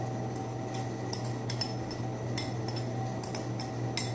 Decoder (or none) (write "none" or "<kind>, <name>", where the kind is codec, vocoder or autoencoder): none